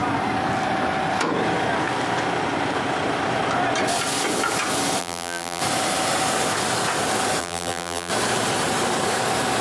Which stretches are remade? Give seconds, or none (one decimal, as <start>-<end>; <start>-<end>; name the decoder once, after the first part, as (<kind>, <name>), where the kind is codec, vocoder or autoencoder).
5.0-5.6 (vocoder, BigVGAN v2); 7.4-8.1